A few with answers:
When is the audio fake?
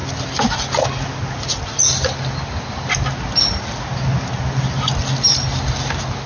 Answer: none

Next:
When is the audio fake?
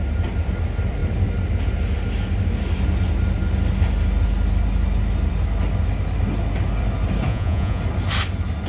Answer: 7.3-7.8 (vocoder, Vocos)